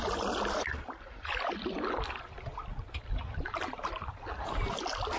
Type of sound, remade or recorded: recorded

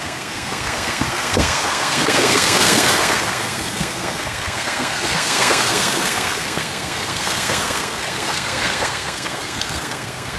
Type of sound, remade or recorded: remade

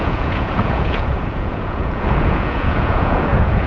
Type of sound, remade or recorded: remade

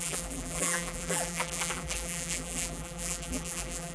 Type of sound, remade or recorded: remade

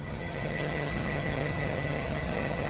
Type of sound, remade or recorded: remade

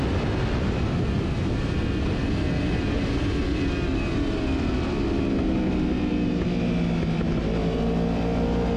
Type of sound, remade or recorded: recorded